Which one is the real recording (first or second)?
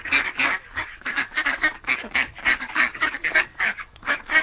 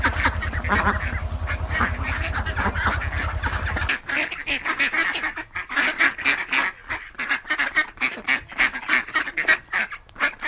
second